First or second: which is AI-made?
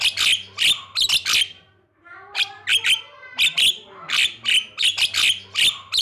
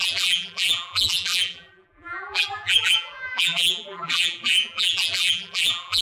second